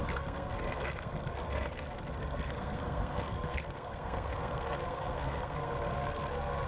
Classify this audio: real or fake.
fake